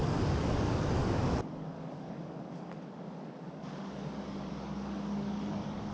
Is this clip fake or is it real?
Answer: fake